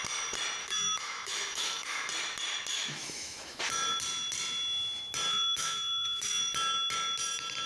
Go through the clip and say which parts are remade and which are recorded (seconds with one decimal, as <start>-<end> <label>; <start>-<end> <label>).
0.0-0.6 recorded; 0.6-2.1 remade; 2.1-2.7 recorded; 2.7-3.6 remade; 3.6-5.3 recorded; 5.3-6.4 remade; 6.4-7.7 recorded